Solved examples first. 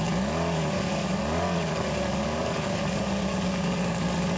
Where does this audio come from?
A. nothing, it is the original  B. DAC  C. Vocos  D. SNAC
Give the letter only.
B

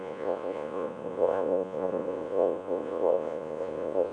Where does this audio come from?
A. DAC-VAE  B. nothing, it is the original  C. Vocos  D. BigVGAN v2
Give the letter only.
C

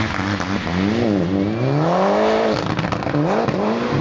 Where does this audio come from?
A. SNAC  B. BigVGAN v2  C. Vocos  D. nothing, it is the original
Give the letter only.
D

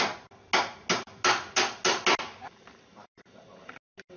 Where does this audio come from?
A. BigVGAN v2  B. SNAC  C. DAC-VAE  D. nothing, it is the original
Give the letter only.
D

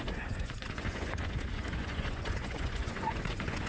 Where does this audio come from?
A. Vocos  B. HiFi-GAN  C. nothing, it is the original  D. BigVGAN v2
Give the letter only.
A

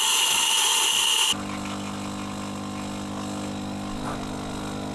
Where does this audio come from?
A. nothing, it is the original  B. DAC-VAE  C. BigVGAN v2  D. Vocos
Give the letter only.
A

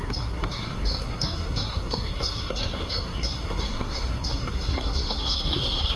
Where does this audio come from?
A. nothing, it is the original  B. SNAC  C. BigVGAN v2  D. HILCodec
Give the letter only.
B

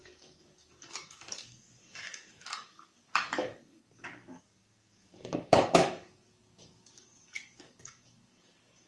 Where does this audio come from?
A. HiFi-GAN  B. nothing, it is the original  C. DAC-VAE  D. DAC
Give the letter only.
D